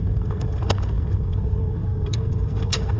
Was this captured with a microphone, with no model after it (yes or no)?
no